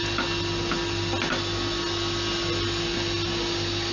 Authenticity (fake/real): real